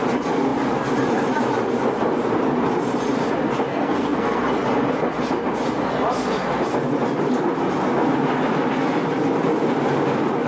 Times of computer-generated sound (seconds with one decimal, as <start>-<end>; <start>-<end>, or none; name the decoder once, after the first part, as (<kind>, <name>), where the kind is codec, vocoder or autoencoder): 3.7-4.4 (codec, SNAC)